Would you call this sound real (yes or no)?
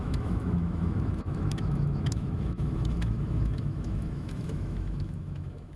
no